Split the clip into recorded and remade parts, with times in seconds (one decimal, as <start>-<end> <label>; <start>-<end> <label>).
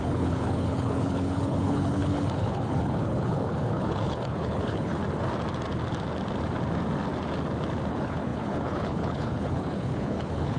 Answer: 0.0-5.0 remade; 5.0-7.9 recorded; 7.9-10.6 remade